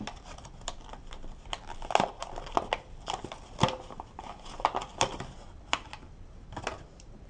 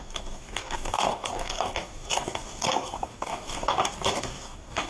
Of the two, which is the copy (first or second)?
second